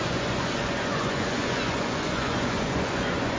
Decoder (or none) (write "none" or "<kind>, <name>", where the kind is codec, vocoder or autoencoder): vocoder, Vocos